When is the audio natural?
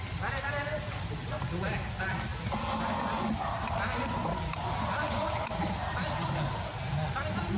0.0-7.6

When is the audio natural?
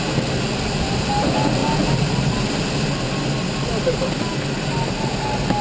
0.0-5.6